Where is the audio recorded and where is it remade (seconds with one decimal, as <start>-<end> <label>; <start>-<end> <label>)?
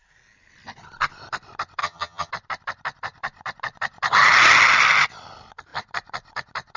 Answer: 0.0-1.8 recorded; 1.8-2.3 remade; 2.3-6.8 recorded